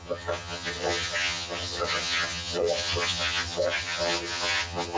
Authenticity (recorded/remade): remade